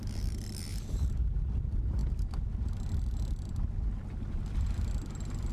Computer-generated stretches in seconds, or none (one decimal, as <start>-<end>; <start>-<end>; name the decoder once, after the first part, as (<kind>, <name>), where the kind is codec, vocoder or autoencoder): 0.7-1.2 (vocoder, BigVGAN v2)